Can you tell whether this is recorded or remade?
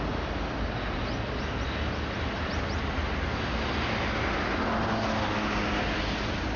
recorded